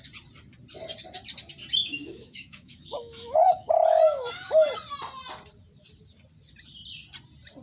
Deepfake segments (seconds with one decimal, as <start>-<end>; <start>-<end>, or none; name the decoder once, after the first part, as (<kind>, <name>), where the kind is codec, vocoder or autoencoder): 1.8-4.3 (autoencoder, DAC-VAE)